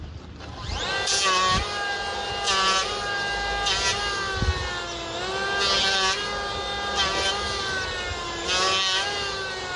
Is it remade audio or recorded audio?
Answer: recorded